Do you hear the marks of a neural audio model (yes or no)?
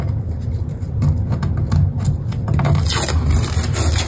no